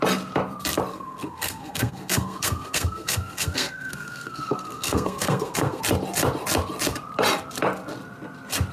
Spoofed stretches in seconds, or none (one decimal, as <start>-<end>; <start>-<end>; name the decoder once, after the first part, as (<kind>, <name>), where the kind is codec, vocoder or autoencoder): 0.9-5.8 (codec, SNAC)